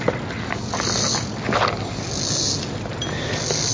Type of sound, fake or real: real